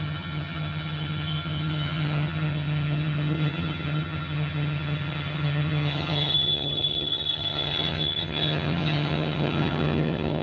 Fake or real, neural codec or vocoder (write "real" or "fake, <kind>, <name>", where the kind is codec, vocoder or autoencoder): fake, vocoder, HiFi-GAN